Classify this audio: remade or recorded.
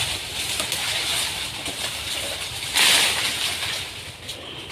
recorded